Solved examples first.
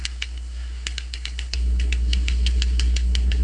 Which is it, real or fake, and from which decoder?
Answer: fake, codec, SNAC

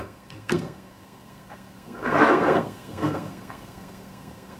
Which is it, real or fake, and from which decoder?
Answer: fake, codec, SNAC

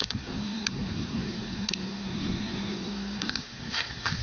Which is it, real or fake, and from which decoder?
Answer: fake, codec, SNAC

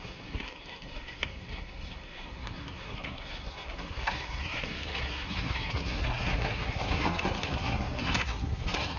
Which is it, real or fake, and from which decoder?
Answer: fake, codec, SNAC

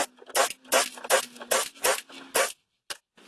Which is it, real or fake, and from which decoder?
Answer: real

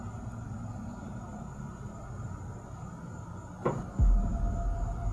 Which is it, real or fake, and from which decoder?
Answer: real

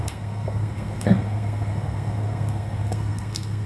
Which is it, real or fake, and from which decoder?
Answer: fake, codec, SNAC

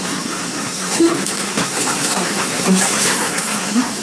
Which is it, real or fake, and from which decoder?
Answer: fake, codec, SNAC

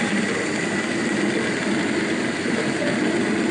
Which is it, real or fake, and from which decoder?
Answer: real